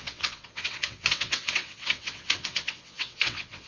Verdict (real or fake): fake